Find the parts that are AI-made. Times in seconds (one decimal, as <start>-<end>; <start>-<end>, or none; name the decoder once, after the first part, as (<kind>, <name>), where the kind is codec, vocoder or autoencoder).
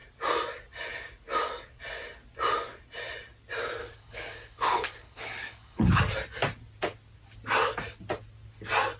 3.8-6.0 (codec, HILCodec)